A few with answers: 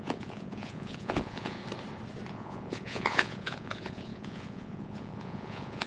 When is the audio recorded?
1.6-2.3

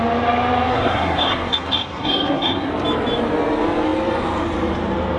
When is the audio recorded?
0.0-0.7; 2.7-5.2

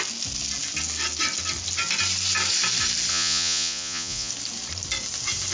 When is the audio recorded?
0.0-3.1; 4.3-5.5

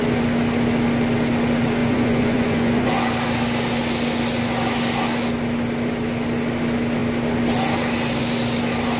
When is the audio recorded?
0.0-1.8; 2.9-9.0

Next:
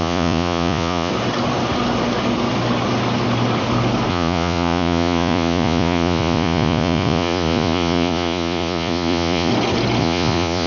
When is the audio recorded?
1.1-4.1; 9.5-10.0

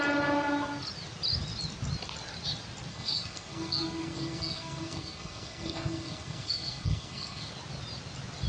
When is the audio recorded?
0.0-2.9; 7.5-8.5